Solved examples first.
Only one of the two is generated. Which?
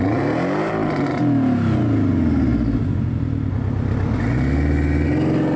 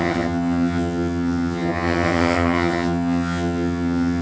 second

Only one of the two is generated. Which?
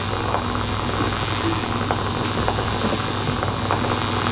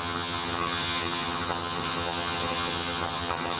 second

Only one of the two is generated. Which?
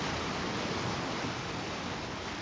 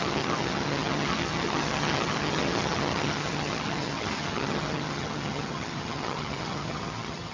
second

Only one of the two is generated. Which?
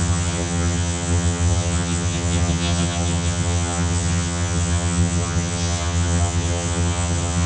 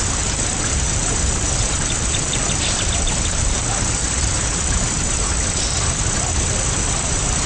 first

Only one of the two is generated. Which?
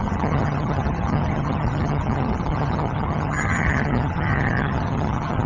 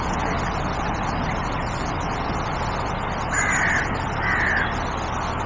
first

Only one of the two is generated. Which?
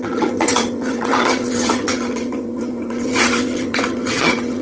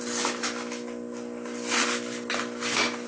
first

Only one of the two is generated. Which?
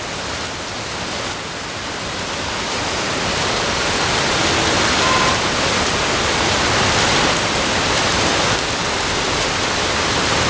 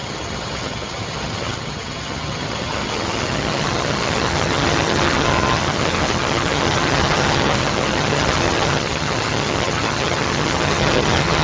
second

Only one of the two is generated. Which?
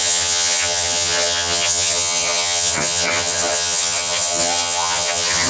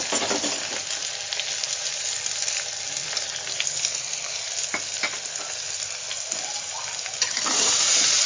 first